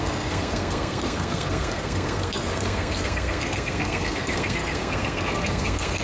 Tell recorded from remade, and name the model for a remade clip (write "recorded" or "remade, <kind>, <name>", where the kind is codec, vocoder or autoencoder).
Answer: remade, codec, SNAC